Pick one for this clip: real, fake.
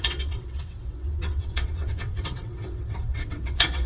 fake